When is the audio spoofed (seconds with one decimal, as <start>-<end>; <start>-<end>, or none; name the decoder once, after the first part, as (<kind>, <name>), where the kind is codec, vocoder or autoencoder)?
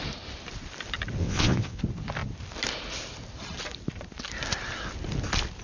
1.2-1.8 (vocoder, WaveNeXt)